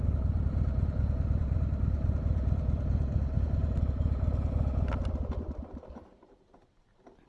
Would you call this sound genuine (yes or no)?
yes